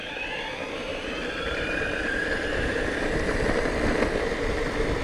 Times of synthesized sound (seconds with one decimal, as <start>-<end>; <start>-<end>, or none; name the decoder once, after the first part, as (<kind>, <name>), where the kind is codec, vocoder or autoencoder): 1.2-4.2 (vocoder, BigVGAN v2)